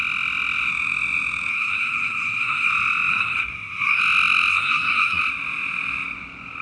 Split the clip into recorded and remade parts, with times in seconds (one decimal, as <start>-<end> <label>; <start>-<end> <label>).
0.0-1.5 recorded; 1.5-2.7 remade; 2.7-3.1 recorded; 3.1-4.0 remade; 4.0-4.5 recorded; 4.5-5.2 remade; 5.2-6.6 recorded